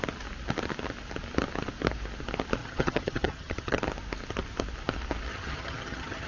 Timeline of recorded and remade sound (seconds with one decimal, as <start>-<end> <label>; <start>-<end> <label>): 0.0-2.6 recorded; 2.6-3.8 remade; 3.8-5.3 recorded; 5.3-6.3 remade